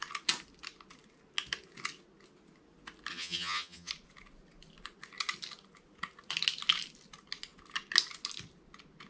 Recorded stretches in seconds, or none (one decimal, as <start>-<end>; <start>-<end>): 0.0-3.1; 3.9-9.1